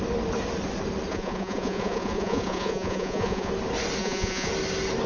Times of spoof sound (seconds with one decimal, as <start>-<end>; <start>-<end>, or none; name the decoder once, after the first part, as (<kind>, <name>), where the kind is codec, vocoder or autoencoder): 1.1-3.5 (vocoder, Vocos); 4.0-4.5